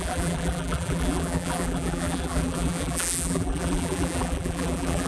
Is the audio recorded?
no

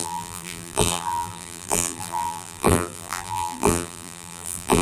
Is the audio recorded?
no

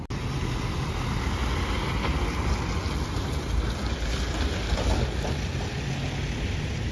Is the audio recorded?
yes